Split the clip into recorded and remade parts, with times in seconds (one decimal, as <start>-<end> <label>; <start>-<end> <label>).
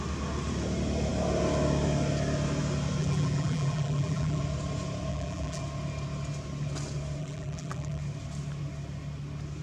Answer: 0.0-3.0 recorded; 3.0-4.4 remade; 4.4-5.1 recorded; 5.1-5.6 remade; 5.6-7.2 recorded; 7.2-8.0 remade; 8.0-9.6 recorded